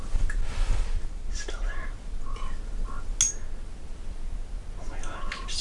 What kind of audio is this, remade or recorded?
recorded